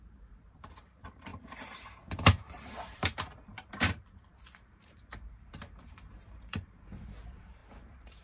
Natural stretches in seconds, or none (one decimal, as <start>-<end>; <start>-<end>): none